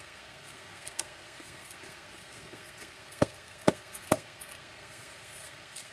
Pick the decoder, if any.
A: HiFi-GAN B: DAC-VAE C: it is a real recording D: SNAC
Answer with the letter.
D